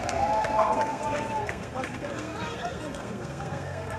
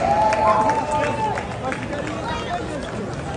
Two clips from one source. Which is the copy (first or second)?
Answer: first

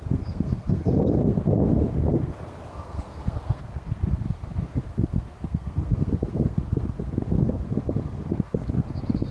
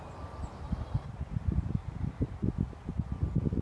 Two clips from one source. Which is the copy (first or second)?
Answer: first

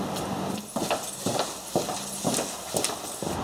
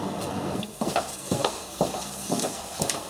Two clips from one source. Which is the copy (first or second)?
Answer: second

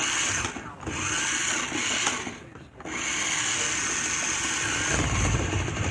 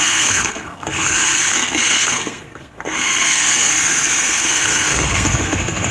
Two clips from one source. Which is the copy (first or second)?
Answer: second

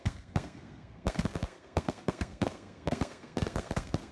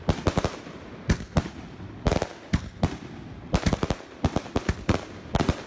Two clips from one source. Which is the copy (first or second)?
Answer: first